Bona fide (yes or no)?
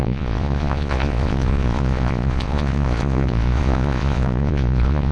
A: no